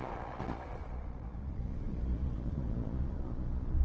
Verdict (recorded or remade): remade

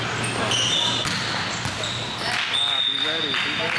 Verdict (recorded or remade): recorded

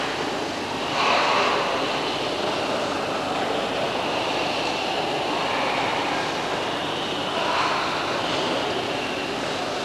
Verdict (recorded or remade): recorded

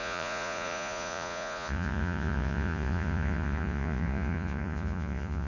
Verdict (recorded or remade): remade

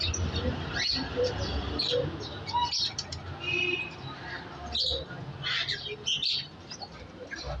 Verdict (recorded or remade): recorded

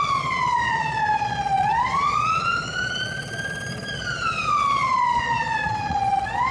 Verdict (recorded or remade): remade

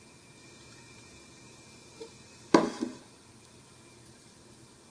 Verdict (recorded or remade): recorded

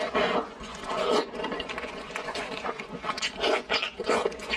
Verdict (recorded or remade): remade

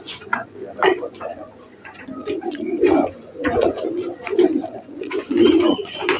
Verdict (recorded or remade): remade